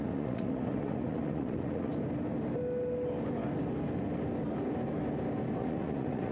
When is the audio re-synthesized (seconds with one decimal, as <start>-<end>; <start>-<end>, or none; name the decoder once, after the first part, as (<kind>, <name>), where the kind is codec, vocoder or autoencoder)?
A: 0.0-1.9 (vocoder, Vocos); 5.6-6.3